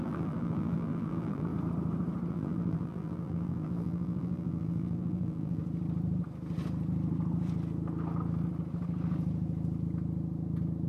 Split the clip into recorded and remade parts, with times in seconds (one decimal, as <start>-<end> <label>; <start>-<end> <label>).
0.0-1.5 remade; 1.5-2.3 recorded; 2.3-5.6 remade; 5.6-10.9 recorded